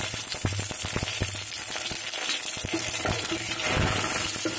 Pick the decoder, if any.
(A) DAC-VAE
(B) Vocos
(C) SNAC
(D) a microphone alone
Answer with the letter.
D